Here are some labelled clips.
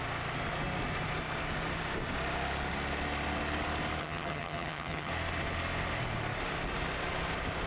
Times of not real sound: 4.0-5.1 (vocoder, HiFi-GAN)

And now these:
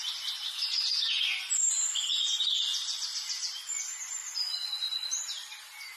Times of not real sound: 4.2-5.2 (vocoder, BigVGAN v2)

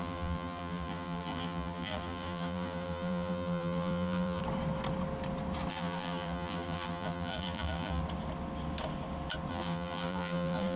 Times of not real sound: 0.0-4.4 (vocoder, BigVGAN v2); 5.7-8.0; 9.5-10.8